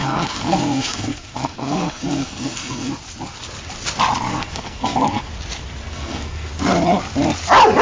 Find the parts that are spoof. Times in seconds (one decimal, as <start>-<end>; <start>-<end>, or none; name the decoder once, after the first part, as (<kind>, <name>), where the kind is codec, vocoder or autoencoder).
0.0-2.9 (codec, SNAC); 4.3-5.3; 5.9-6.5